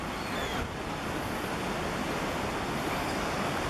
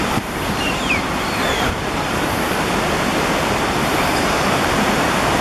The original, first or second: first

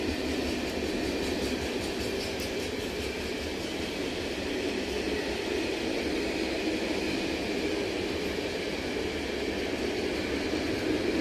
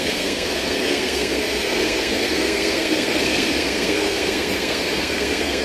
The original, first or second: first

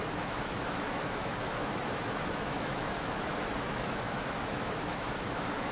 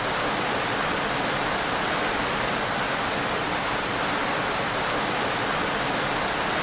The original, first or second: second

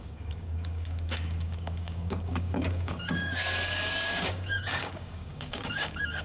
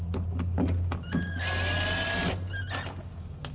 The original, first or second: second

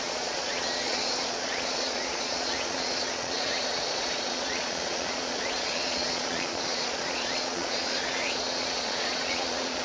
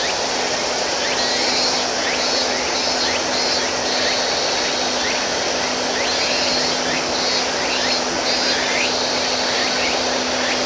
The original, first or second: second